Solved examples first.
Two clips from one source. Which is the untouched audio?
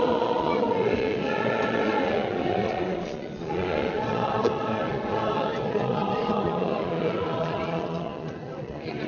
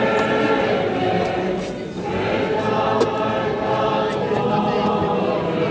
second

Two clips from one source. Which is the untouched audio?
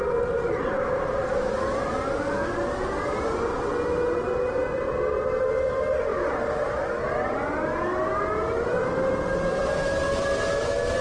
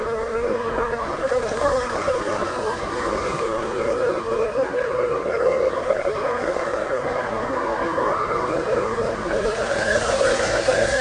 first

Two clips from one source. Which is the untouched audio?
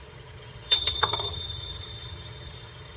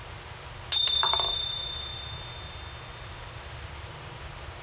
second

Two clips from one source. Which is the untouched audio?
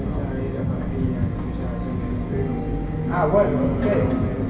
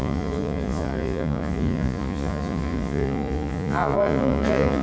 first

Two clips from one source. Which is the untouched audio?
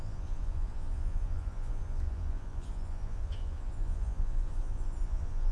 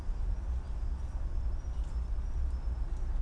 second